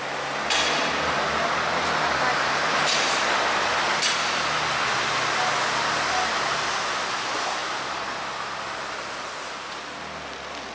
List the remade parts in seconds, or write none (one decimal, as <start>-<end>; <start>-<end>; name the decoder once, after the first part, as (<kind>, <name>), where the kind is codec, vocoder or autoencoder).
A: none